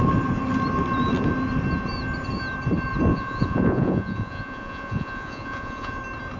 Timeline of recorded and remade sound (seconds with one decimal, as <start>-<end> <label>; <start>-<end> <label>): 0.0-3.1 recorded; 3.1-6.0 remade; 6.0-6.4 recorded